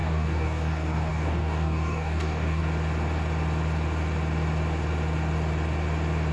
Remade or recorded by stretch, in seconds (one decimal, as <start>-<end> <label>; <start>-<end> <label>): 0.0-2.6 remade; 2.6-6.3 recorded